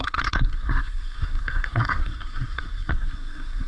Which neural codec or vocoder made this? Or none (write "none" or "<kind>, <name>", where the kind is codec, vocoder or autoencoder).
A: codec, SNAC